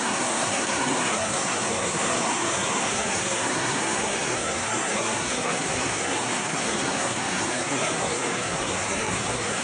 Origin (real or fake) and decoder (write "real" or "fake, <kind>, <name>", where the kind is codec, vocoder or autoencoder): fake, codec, SNAC